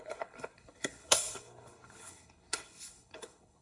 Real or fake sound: fake